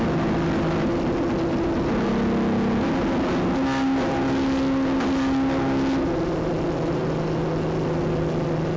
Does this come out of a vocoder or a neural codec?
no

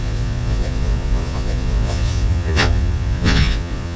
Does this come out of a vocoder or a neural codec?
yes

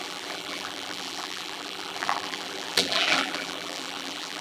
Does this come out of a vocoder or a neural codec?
yes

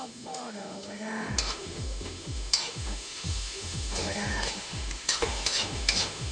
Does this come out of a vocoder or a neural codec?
yes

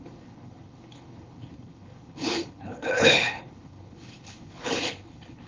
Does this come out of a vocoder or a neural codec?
yes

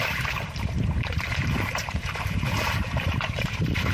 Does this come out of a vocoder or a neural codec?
yes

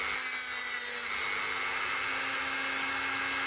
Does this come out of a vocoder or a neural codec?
no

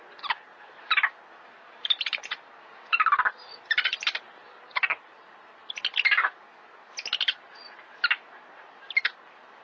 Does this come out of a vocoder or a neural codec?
no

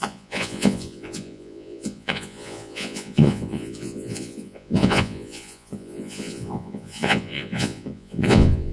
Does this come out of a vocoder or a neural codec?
yes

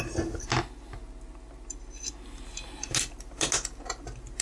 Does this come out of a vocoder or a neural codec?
no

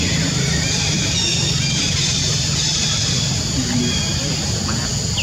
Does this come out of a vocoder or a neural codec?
no